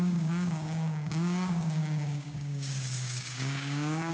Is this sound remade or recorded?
remade